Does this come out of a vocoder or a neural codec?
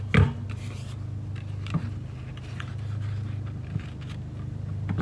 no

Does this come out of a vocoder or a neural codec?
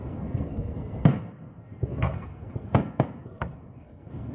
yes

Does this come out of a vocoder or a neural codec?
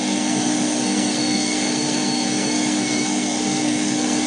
yes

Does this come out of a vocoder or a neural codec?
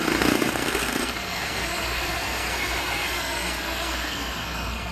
yes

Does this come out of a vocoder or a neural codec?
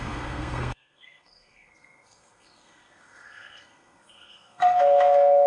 yes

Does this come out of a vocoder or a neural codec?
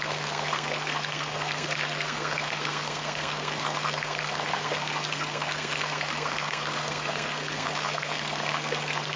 yes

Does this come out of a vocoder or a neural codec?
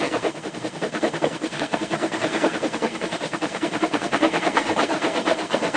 yes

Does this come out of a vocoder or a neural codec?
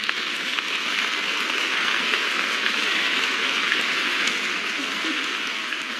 yes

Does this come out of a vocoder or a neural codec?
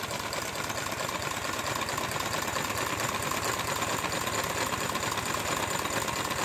no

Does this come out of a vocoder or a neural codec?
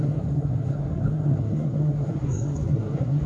yes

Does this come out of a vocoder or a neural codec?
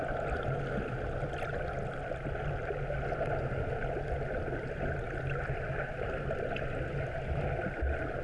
no